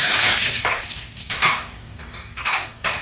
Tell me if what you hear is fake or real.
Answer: fake